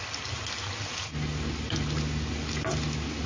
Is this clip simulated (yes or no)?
no